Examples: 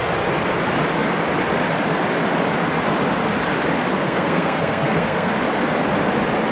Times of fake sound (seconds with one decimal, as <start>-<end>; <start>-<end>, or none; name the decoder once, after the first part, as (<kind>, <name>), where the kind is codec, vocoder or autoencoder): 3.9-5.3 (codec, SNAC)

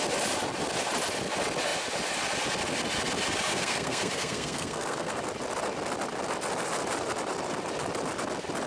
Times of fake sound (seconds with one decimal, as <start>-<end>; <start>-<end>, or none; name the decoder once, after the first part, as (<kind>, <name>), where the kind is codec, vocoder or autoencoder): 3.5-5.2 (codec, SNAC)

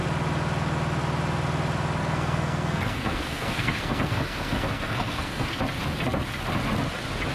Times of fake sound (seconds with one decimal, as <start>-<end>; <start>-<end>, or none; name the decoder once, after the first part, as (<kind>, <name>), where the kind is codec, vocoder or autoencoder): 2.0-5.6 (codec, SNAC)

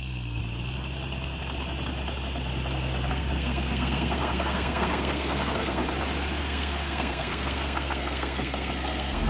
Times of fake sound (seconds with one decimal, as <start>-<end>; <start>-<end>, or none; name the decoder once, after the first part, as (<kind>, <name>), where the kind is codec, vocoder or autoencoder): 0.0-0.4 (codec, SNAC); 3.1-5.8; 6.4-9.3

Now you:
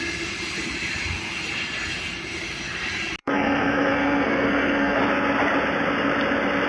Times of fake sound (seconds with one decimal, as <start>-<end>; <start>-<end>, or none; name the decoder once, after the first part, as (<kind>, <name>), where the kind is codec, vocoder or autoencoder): 3.2-5.0 (codec, SNAC)

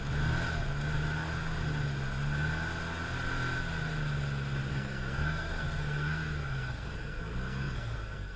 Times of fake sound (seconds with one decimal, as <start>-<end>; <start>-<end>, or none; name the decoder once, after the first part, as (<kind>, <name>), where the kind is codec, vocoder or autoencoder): 4.7-8.4 (codec, SNAC)

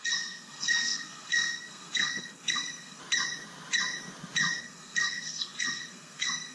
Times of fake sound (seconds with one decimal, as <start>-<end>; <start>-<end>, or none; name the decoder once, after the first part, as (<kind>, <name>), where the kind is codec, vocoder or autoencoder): 0.0-3.0 (codec, SNAC); 4.6-6.5

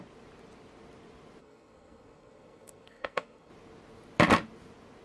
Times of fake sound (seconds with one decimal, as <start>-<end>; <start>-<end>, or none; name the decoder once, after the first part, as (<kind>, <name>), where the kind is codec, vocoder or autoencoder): 1.4-3.5 (codec, SNAC)